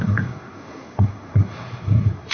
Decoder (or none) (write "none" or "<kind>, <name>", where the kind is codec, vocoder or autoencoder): codec, SNAC